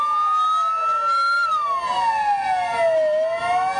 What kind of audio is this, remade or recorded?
recorded